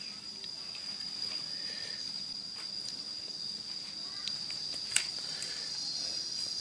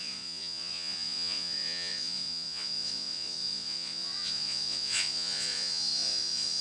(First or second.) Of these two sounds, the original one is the first